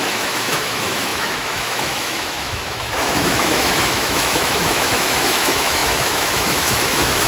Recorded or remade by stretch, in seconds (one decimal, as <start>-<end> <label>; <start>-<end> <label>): 0.0-7.3 remade